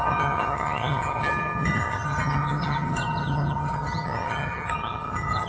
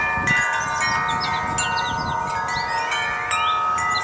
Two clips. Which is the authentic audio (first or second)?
second